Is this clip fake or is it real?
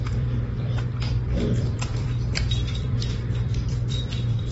fake